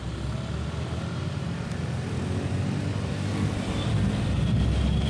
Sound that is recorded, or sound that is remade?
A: recorded